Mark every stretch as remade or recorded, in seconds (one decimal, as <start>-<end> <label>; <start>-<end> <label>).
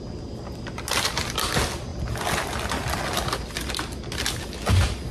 0.0-5.1 recorded